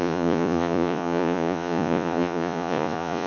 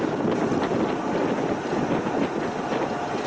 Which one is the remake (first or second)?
first